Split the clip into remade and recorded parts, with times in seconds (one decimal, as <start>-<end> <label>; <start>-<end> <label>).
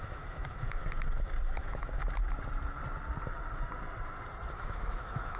0.0-0.8 remade; 0.8-1.6 recorded; 1.6-2.0 remade; 2.0-4.5 recorded; 4.5-5.4 remade